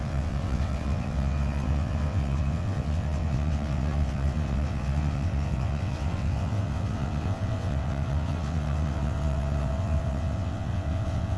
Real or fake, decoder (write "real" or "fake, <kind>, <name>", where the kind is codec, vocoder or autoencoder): fake, vocoder, WaveNeXt